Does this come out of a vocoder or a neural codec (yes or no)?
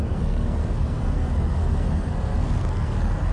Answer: yes